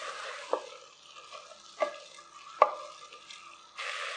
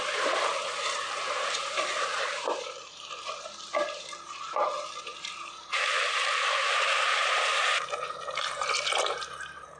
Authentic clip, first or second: first